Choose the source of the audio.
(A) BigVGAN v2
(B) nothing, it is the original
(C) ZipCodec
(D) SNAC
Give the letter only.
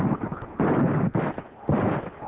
B